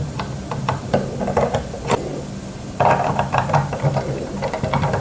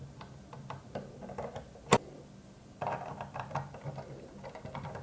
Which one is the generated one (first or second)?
first